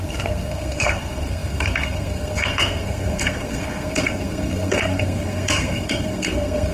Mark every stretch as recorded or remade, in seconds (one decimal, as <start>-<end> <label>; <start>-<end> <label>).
0.0-6.7 remade